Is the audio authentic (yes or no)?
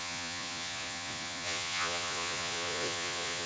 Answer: no